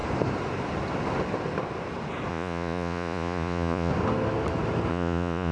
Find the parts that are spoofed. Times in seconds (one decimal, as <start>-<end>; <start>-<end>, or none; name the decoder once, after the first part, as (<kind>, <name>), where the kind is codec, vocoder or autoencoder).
2.3-3.9 (vocoder, Vocos); 4.9-5.5